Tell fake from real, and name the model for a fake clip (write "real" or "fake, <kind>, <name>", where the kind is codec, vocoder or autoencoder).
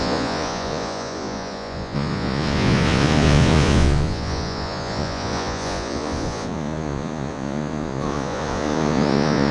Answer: fake, vocoder, Vocos